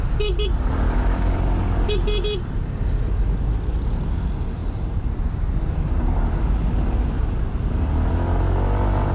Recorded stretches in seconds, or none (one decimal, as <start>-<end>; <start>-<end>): 0.0-9.1